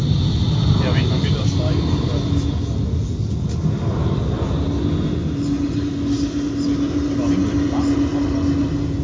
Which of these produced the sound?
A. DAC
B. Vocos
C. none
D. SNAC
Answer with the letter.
C